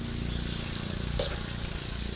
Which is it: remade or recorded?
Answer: recorded